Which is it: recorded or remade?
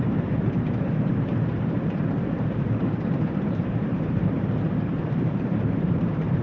remade